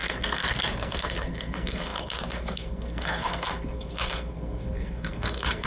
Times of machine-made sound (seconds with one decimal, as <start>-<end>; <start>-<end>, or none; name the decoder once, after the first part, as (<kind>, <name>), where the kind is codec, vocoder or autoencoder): 0.0-5.7 (codec, SNAC)